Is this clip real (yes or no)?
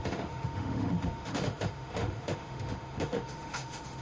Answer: no